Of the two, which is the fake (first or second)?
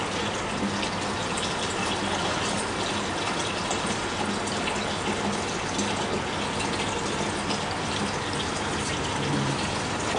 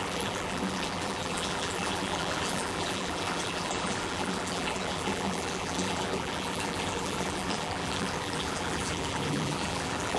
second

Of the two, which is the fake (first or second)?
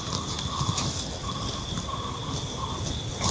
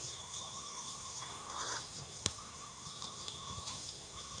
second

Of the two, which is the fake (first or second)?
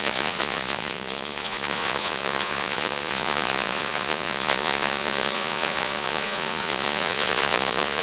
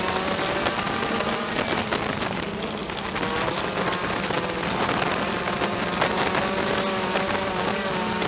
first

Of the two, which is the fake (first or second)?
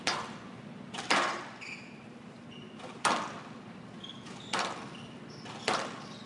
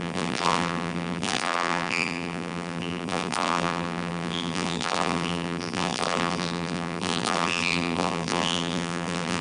second